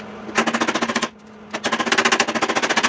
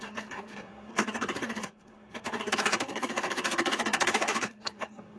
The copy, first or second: second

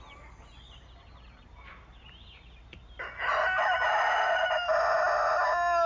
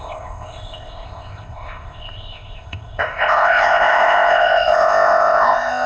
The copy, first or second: second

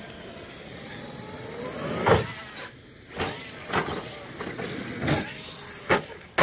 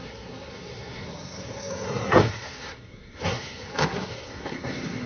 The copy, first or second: second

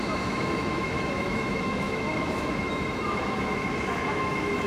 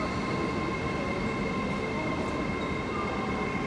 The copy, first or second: first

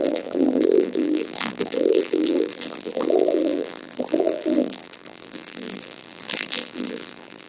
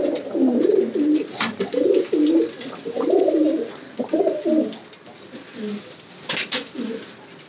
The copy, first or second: first